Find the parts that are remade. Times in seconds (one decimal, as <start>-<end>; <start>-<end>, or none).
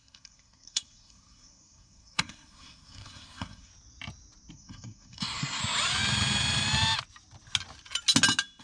0.0-3.7; 4.5-5.6